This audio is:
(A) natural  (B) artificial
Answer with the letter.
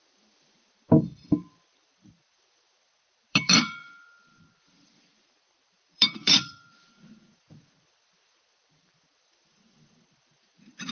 B